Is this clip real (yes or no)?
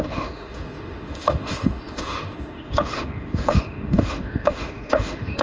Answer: no